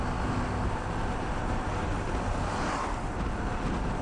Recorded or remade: recorded